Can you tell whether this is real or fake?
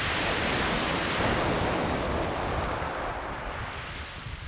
real